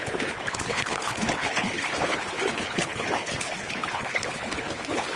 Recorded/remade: remade